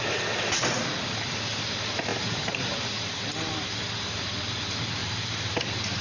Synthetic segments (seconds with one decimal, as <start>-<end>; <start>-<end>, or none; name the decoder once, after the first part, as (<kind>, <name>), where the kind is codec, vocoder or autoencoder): 2.1-4.2 (vocoder, BigVGAN v2); 5.0-5.6